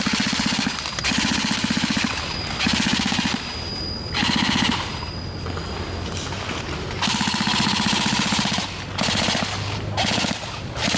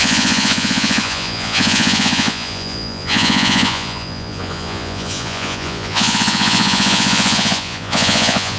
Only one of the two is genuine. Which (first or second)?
first